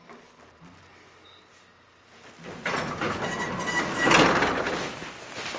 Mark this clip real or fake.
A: real